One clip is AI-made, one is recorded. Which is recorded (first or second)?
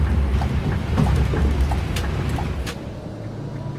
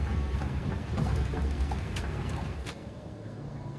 first